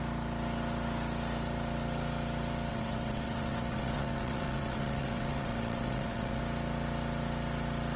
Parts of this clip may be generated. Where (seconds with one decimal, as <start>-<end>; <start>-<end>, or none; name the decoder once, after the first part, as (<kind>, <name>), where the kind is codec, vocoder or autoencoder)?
2.7-6.4 (vocoder, WaveNeXt)